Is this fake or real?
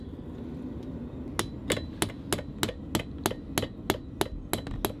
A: real